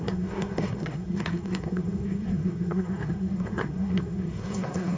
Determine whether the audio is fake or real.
fake